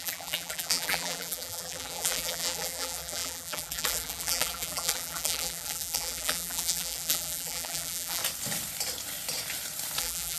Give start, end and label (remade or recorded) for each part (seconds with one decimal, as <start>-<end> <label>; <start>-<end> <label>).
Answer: 0.0-8.2 remade; 8.2-10.0 recorded; 10.0-10.4 remade